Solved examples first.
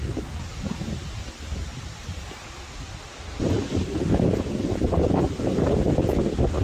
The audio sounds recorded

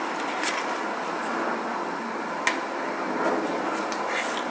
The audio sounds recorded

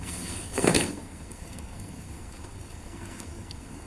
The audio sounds remade